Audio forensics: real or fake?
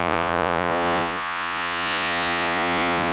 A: fake